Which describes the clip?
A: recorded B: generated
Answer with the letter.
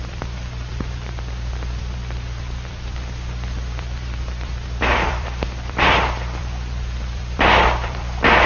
B